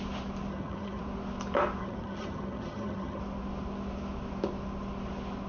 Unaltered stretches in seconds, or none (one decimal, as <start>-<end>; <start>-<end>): 0.0-0.5; 1.0-1.8; 3.2-5.5